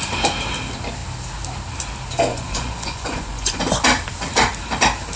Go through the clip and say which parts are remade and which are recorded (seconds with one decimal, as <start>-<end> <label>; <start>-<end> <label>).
0.0-2.3 recorded; 2.3-3.6 remade; 3.6-5.2 recorded